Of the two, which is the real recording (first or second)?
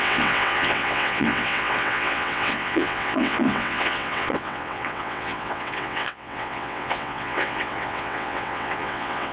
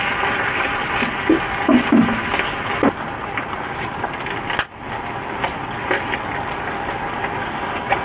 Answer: second